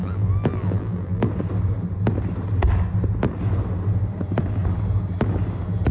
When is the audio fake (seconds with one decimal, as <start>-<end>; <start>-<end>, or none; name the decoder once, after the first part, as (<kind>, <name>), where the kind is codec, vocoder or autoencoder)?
0.0-1.3 (vocoder, BigVGAN v2)

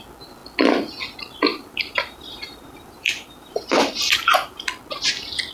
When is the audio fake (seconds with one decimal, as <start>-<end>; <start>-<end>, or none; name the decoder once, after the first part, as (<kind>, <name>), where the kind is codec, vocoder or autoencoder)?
1.5-4.7 (vocoder, BigVGAN v2)

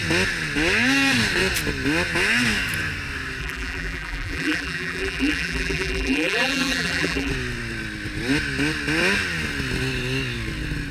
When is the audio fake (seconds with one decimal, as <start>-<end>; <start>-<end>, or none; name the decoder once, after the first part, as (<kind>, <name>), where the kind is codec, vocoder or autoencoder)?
3.4-7.3 (vocoder, BigVGAN v2)

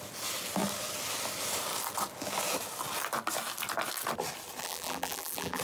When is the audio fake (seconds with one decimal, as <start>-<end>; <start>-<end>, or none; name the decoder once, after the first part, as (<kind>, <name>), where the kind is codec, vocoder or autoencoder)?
4.6-5.6 (vocoder, BigVGAN v2)

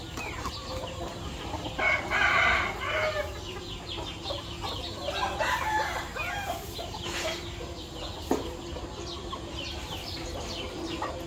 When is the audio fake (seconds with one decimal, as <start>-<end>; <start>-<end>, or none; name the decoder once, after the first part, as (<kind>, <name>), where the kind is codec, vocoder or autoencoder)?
0.0-0.6 (vocoder, BigVGAN v2); 5.4-6.1; 9.8-11.3

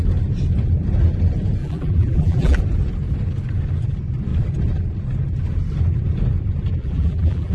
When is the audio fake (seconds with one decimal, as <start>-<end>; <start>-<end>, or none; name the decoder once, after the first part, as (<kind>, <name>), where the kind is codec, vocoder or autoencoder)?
1.6-2.6 (vocoder, BigVGAN v2); 6.8-7.5

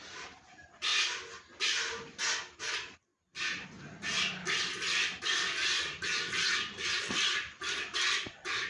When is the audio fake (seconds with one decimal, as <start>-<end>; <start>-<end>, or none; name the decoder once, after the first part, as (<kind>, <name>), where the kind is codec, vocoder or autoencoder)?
0.0-0.9 (vocoder, BigVGAN v2); 1.6-8.7

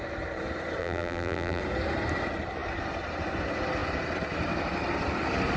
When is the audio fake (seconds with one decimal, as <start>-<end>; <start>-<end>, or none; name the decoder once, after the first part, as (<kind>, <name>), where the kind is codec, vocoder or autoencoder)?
0.8-1.6 (vocoder, BigVGAN v2)